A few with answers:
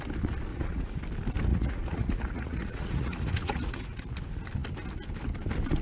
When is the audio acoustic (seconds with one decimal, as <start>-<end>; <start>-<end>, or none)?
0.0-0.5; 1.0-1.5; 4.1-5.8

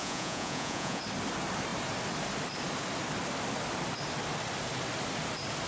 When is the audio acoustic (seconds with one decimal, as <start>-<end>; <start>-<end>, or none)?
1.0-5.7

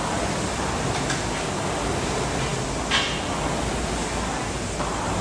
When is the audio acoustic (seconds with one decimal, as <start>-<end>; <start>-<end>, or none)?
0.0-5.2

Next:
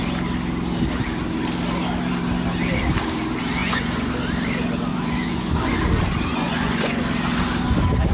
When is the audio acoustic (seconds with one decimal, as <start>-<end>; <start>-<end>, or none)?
0.0-3.6; 4.1-4.9; 5.6-6.3; 7.0-8.1

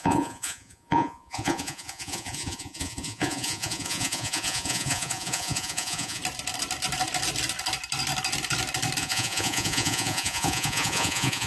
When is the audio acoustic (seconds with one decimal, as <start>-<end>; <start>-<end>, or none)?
6.2-9.0

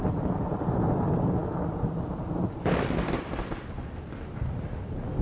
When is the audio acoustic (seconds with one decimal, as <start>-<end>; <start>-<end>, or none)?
0.0-5.2

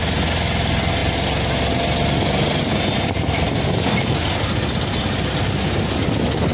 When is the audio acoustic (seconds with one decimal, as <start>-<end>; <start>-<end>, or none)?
0.0-6.5